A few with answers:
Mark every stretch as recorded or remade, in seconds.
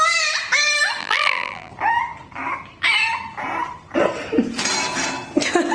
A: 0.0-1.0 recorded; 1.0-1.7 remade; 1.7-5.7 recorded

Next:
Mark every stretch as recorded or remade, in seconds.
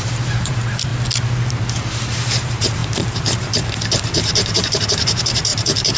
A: 0.0-0.9 remade; 0.9-1.5 recorded; 1.5-6.0 remade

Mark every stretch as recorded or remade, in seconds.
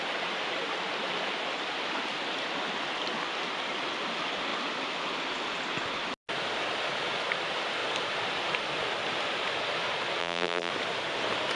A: 0.0-10.2 recorded; 10.2-10.7 remade; 10.7-11.6 recorded